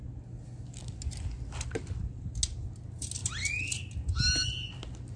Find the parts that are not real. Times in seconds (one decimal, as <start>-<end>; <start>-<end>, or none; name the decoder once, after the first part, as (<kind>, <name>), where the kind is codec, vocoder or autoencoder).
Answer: none